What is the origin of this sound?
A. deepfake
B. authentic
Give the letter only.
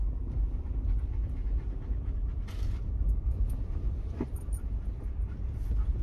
A